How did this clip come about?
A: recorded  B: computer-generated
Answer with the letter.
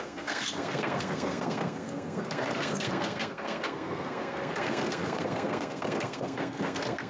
B